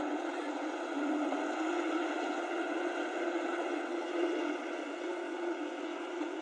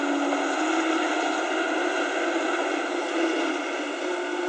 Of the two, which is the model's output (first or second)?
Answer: first